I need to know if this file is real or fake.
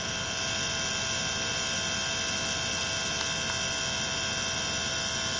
real